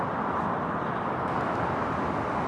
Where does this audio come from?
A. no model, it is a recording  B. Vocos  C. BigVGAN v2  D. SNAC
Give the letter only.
A